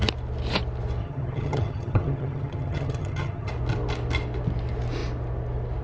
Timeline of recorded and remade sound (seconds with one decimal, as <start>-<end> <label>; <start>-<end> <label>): 0.0-1.0 recorded; 1.0-3.5 remade; 3.5-5.8 recorded